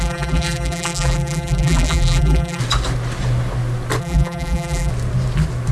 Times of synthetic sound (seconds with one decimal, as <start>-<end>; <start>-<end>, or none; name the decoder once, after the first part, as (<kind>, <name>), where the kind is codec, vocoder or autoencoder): 0.0-2.6 (vocoder, BigVGAN v2); 4.0-4.9